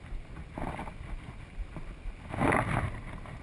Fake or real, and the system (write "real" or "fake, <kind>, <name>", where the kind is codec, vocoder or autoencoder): real